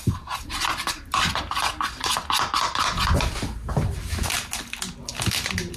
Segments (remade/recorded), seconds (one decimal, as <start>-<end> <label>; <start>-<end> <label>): 0.0-5.8 recorded